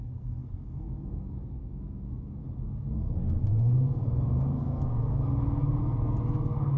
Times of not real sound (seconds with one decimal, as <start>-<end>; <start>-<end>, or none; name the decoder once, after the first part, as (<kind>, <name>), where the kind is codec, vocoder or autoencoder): 0.0-5.1 (codec, SNAC); 5.8-6.8